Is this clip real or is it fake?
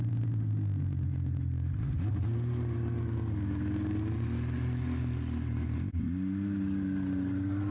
real